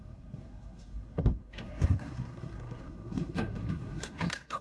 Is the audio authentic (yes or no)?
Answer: no